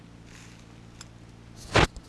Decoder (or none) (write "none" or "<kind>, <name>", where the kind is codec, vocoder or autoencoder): none